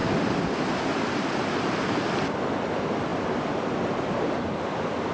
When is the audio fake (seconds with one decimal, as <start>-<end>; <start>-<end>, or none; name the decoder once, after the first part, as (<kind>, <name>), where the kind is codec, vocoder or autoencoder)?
none